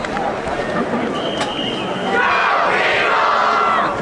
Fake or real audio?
real